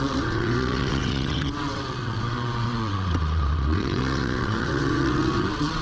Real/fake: fake